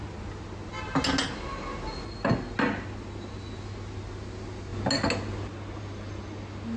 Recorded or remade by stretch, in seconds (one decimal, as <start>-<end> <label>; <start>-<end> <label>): 0.0-6.8 recorded